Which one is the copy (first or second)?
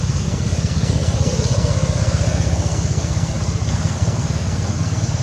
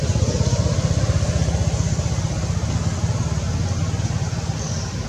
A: first